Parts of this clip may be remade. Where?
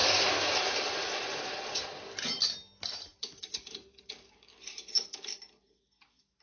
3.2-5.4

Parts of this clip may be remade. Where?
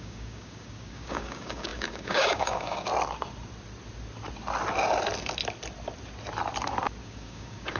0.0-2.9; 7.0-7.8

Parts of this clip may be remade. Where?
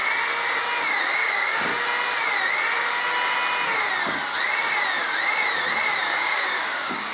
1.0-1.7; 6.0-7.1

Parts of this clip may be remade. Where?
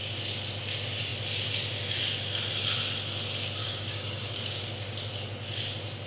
3.6-4.6